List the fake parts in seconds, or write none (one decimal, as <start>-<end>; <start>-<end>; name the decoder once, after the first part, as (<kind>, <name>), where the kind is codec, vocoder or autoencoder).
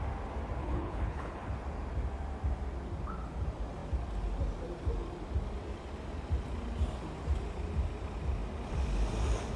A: 0.6-1.5 (codec, HILCodec)